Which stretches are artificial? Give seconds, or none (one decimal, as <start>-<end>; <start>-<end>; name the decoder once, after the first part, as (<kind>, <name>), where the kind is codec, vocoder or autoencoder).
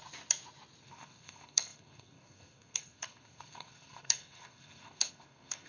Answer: 0.8-5.7 (codec, SNAC)